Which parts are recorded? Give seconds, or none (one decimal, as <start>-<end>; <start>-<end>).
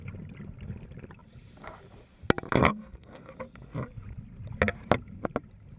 0.0-2.6; 3.3-5.8